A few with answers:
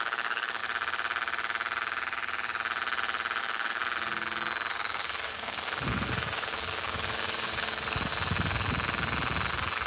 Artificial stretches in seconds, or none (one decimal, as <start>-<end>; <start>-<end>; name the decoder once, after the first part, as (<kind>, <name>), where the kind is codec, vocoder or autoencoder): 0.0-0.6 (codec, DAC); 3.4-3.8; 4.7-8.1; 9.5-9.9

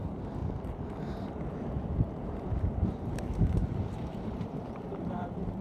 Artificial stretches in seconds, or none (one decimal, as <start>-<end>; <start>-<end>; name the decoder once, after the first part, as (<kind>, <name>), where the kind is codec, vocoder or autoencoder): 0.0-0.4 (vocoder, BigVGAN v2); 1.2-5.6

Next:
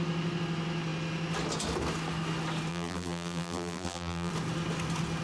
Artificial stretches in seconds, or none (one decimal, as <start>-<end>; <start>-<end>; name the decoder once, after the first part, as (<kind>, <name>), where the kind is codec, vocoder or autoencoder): 2.7-4.3 (vocoder, BigVGAN v2)